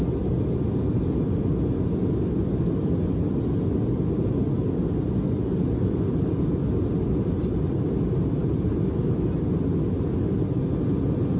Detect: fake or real real